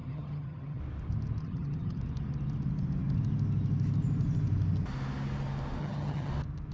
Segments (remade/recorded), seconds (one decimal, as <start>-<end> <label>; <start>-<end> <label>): 0.0-0.8 remade; 0.8-1.4 recorded; 1.4-2.0 remade; 2.0-5.8 recorded; 5.8-6.3 remade; 6.3-6.7 recorded